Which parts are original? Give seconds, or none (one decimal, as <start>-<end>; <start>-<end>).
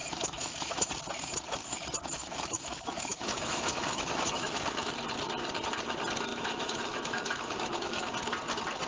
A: 0.9-2.2; 4.9-6.3; 8.1-8.9